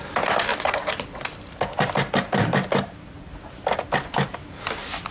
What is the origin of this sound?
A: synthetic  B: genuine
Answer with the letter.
B